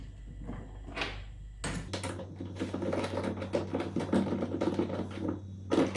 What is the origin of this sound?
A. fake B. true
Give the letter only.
B